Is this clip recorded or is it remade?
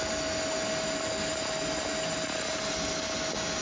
recorded